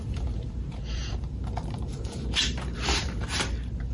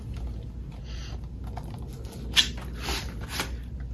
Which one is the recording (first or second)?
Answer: second